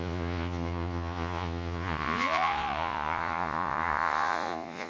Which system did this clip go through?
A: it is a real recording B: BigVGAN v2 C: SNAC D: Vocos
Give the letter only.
D